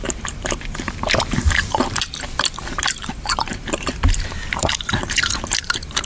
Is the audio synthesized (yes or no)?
yes